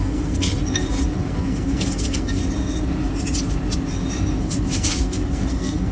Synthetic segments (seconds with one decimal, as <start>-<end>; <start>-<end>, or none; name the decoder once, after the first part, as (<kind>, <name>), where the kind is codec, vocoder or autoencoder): 0.0-0.5 (codec, SNAC); 1.2-2.4; 4.4-5.9